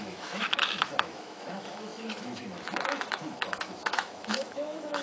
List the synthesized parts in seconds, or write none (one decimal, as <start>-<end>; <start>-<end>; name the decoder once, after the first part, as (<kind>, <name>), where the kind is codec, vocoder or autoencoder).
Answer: 0.0-5.0 (autoencoder, DAC-VAE)